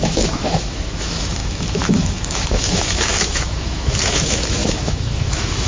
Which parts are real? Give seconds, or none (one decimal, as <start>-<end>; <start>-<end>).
none